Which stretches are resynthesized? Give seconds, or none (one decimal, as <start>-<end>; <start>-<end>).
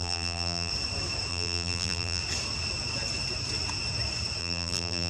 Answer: 0.0-0.7; 1.3-2.2; 4.4-5.1